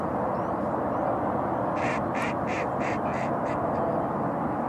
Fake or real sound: real